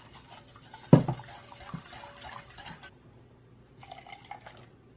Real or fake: real